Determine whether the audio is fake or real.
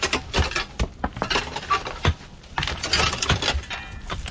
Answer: real